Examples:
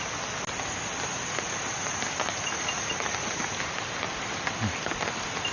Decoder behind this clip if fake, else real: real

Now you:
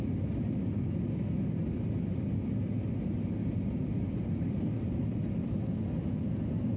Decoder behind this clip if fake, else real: real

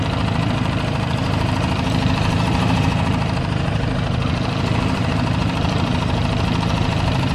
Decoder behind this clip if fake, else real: fake, vocoder, BigVGAN v2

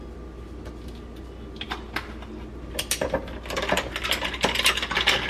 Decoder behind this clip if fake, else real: real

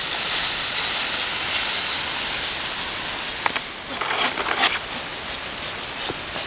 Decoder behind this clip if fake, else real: real